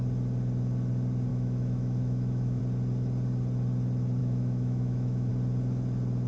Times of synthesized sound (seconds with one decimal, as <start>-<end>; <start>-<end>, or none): 1.3-2.6; 4.2-5.3